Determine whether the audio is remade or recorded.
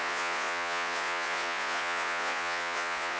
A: remade